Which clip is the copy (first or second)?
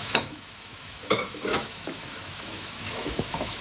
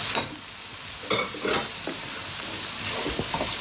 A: first